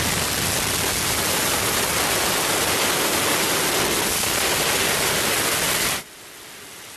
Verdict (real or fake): real